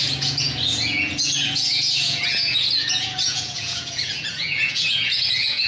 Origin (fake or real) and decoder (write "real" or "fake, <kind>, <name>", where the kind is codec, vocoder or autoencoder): fake, vocoder, Vocos